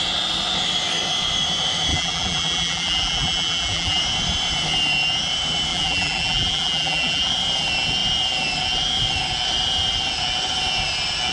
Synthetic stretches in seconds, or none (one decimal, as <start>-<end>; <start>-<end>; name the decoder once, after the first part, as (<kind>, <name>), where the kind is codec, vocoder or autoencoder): 1.9-4.0 (vocoder, BigVGAN v2); 5.7-7.3

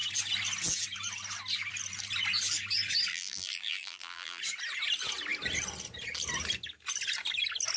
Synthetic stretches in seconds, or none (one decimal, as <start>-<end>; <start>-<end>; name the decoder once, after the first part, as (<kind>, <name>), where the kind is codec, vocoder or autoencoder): 3.1-4.4 (vocoder, BigVGAN v2)

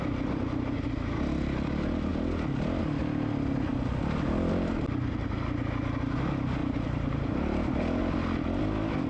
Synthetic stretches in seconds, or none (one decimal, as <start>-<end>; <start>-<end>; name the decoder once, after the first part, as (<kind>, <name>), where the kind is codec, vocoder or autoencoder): 6.6-7.7 (vocoder, BigVGAN v2)

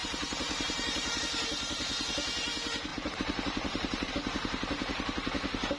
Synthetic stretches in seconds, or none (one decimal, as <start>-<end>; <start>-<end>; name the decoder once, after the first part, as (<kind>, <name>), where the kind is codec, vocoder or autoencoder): 0.0-1.2 (vocoder, BigVGAN v2); 2.9-4.1

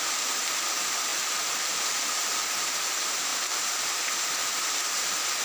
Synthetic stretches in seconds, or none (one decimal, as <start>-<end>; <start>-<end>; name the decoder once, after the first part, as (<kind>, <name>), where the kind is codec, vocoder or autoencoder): 0.0-5.4 (vocoder, BigVGAN v2)